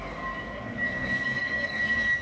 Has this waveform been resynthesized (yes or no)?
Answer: yes